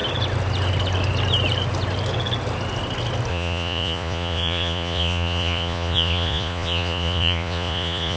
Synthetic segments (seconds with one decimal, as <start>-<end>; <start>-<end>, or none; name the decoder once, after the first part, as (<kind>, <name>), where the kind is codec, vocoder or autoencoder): 3.3-8.2 (vocoder, Vocos)